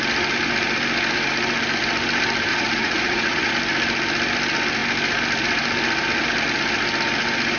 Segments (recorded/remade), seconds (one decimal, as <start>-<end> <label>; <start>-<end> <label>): 0.0-2.5 recorded; 2.5-3.5 remade; 3.5-7.6 recorded